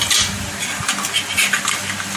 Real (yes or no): yes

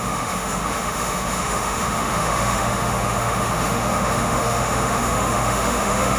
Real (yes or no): no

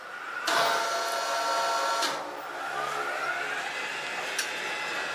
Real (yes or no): yes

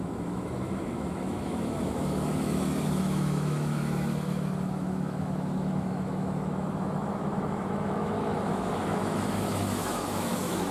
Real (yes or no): no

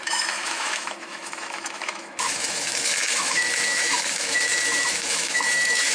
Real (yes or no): no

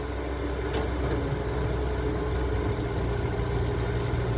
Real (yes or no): yes